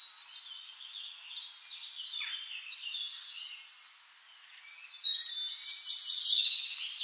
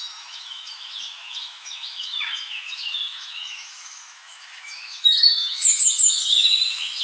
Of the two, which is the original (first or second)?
first